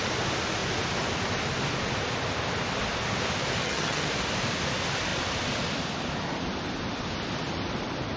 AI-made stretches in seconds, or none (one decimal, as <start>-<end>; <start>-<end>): 3.6-4.1